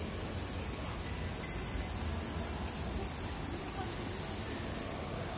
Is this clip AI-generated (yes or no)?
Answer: no